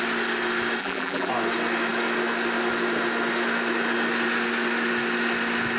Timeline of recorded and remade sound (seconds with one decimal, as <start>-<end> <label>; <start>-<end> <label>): 0.0-0.8 recorded; 0.8-1.3 remade; 1.3-5.8 recorded